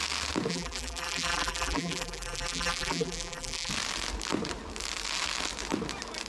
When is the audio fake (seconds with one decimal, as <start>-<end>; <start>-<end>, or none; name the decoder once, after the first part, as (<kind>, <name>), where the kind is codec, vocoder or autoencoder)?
0.5-3.7 (vocoder, BigVGAN v2)